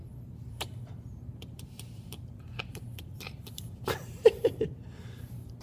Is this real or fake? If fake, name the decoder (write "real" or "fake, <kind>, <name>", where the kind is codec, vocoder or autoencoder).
fake, vocoder, BigVGAN v2